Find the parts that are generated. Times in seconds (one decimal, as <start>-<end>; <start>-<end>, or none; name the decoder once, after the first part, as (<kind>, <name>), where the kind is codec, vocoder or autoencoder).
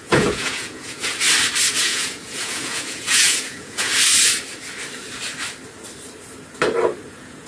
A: 0.0-1.1 (vocoder, Vocos); 1.8-3.9; 7.1-7.5